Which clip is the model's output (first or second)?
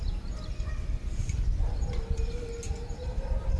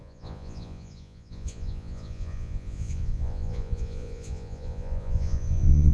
second